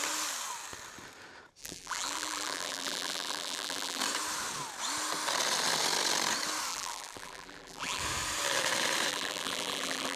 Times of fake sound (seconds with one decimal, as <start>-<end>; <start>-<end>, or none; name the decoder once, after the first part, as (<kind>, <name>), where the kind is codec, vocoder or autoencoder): 1.6-4.0 (vocoder, BigVGAN v2); 6.7-8.0; 9.1-10.2